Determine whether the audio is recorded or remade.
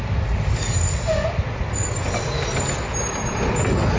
recorded